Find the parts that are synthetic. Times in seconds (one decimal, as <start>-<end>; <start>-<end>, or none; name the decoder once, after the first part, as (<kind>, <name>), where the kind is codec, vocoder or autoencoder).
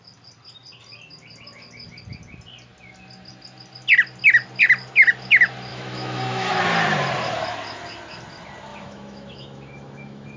5.7-6.5 (autoencoder, DAC-VAE); 8.7-10.4